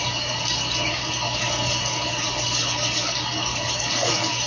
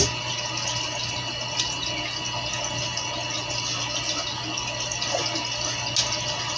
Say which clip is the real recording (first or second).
second